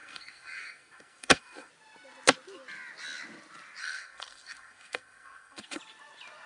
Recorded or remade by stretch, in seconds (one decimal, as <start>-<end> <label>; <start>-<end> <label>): 0.0-1.7 remade; 1.7-3.8 recorded; 3.8-5.8 remade; 5.8-6.5 recorded